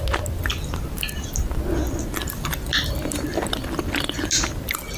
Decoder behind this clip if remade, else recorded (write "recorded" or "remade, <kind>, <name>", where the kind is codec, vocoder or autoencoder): recorded